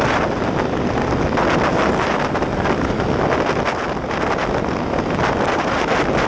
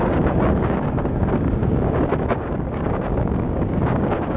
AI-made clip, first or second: second